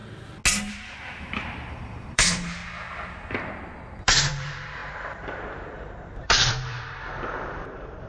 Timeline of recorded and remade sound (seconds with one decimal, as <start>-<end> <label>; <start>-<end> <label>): 0.0-0.7 recorded; 0.7-2.6 remade; 2.6-4.0 recorded; 4.0-8.1 remade